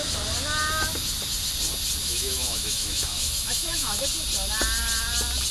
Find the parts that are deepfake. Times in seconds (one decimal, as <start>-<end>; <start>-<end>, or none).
2.0-4.0